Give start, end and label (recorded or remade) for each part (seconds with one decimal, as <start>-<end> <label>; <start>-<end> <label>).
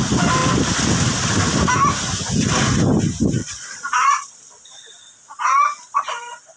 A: 0.0-3.4 recorded; 3.4-4.4 remade; 4.4-6.6 recorded